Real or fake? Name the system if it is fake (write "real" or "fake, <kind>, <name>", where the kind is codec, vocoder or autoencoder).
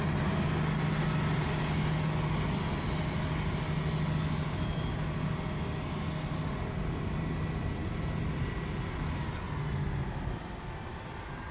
real